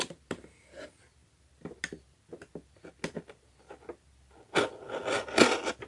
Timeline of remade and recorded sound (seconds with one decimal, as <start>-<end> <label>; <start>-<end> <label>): 0.0-5.9 recorded